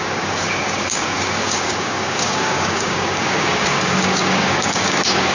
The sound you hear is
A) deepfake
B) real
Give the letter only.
A